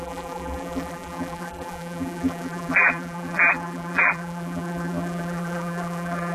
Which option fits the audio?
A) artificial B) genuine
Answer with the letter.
A